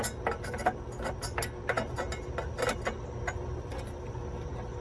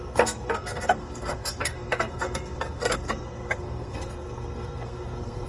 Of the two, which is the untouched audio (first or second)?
first